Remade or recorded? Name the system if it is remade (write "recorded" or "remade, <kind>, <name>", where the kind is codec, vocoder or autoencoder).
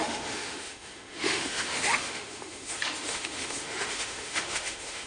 remade, autoencoder, DAC-VAE